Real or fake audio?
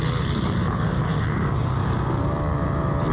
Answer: fake